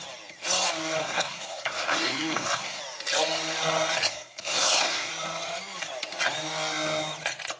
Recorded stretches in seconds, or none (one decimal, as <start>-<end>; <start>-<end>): 0.0-1.0; 2.8-4.1; 5.1-7.6

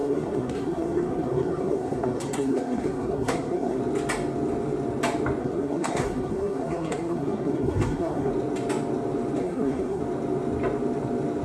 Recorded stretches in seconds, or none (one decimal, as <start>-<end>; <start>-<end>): 3.8-5.4; 8.3-9.4; 10.0-11.4

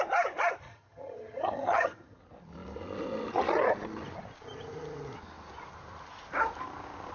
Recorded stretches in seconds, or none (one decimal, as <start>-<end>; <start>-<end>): 0.0-0.7; 2.2-7.1